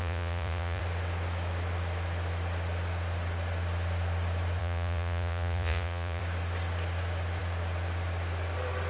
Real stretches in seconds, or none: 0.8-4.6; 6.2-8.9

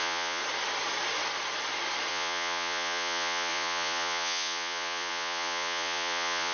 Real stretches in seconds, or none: 0.4-2.1

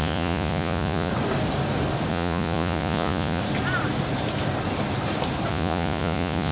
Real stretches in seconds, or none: 1.1-2.1; 3.4-5.5

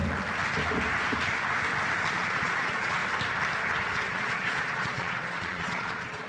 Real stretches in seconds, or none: 0.0-2.1; 3.0-3.8